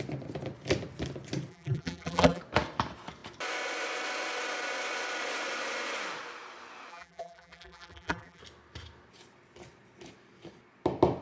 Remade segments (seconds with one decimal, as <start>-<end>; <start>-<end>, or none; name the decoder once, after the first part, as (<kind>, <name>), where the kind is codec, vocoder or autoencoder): 1.5-2.4 (vocoder, BigVGAN v2); 6.9-8.4